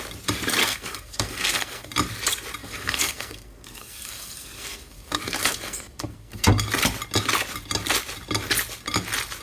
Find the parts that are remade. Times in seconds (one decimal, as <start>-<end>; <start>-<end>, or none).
0.6-1.9; 2.6-6.5